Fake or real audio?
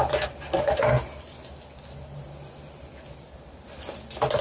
real